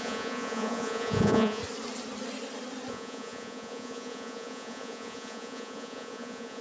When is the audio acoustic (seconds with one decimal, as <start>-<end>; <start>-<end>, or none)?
1.6-2.9